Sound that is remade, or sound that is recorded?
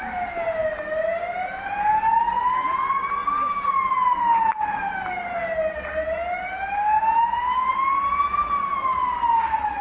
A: recorded